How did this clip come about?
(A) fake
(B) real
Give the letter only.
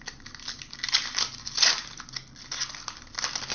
B